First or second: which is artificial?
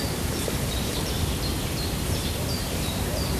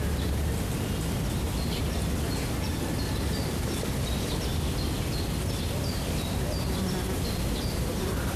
first